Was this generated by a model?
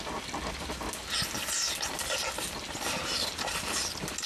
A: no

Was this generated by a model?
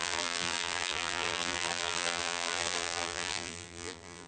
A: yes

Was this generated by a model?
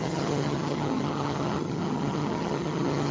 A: yes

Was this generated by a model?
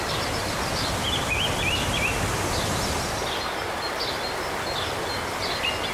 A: no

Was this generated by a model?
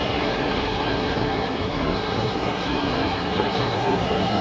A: yes